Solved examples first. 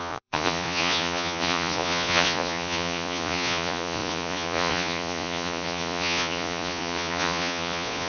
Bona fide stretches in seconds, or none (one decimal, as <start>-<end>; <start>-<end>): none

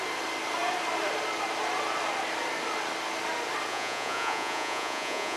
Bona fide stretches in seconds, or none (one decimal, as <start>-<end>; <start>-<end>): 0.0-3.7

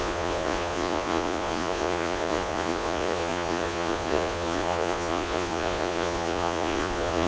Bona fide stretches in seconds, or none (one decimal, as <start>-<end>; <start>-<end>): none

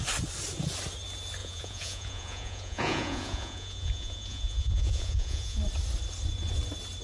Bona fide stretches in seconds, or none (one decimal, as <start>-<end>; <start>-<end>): 0.0-1.4; 5.6-7.0

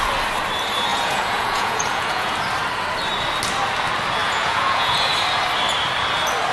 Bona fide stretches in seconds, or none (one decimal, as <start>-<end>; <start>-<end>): 0.0-0.9; 2.3-4.2; 5.1-6.5

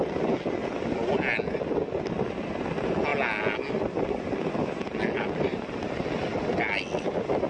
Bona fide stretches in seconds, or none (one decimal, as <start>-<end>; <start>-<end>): 0.0-7.5

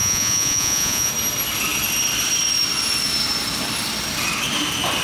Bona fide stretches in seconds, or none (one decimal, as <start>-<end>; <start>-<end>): 1.1-5.0

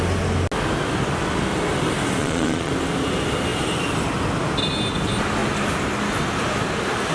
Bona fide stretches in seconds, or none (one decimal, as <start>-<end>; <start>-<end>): 0.0-2.2; 2.7-7.1